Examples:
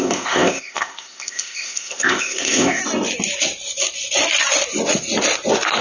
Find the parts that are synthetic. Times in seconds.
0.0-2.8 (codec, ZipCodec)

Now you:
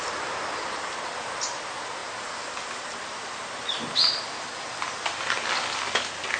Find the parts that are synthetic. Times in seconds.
none

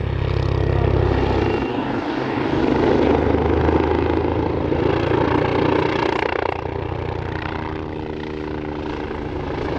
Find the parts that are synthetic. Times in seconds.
1.7-2.6 (codec, DAC)

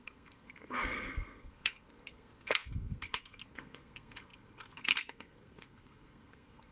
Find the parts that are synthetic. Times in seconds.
0.0-6.7 (codec, SNAC)

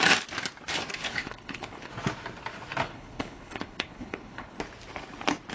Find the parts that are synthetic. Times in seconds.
1.0-1.9 (codec, HILCodec); 2.9-4.6

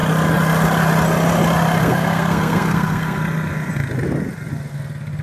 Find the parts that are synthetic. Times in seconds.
1.8-3.2 (codec, SNAC)

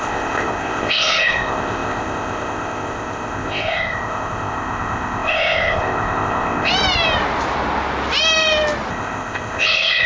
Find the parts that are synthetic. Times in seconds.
0.0-6.7 (codec, ZipCodec); 8.9-10.1

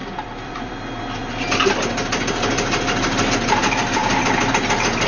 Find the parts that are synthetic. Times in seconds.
0.0-0.7 (vocoder, BigVGAN v2); 4.0-4.5